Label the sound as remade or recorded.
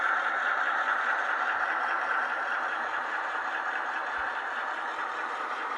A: remade